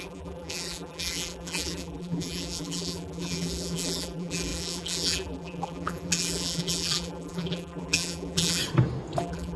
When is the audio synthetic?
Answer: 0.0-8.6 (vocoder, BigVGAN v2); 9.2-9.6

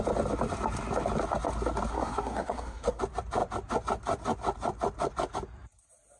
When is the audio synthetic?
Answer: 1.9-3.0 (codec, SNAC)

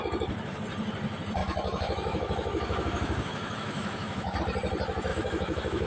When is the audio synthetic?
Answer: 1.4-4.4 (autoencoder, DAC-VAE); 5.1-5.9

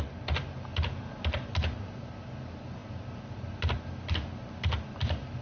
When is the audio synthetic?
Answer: none